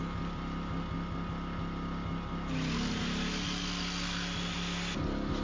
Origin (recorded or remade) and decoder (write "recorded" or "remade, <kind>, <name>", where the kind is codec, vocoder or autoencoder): recorded